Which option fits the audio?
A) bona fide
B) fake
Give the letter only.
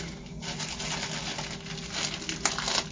A